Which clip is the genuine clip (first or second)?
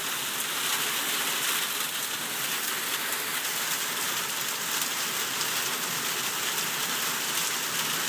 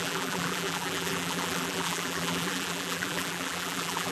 first